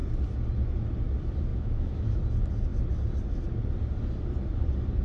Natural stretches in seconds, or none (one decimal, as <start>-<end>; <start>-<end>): 0.0-1.5; 2.2-5.0

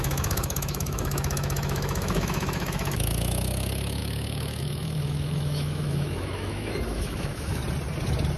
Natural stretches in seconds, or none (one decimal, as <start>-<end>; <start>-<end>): 7.6-8.4

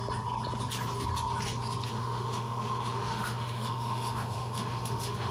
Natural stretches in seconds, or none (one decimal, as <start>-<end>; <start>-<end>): 0.0-1.9

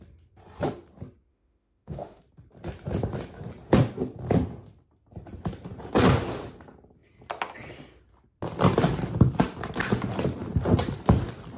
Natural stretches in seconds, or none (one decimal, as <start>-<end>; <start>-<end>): 0.0-1.3; 2.2-11.6

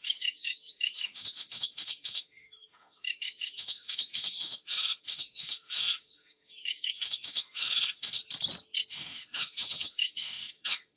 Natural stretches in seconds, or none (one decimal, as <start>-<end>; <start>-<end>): 8.2-8.9

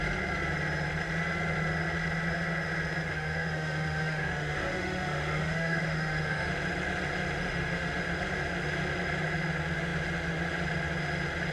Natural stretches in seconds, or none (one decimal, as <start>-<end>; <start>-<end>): 0.0-3.1; 6.5-7.4; 8.0-11.5

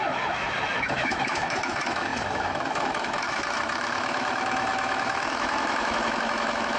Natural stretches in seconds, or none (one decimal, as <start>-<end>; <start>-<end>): none